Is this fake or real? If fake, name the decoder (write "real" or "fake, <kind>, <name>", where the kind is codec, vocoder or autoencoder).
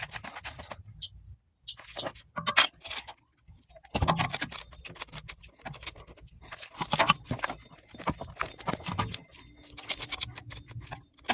real